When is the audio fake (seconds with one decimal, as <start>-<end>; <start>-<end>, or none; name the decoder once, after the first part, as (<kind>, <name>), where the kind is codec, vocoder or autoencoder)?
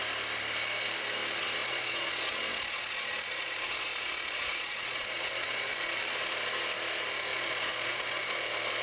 1.6-5.7 (vocoder, Vocos); 7.3-8.4